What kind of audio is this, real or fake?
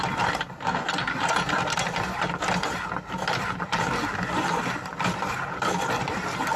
real